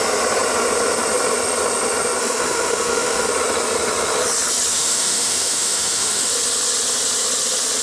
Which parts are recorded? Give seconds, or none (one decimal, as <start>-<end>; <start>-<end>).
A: 0.0-2.2; 3.3-4.7; 6.3-7.8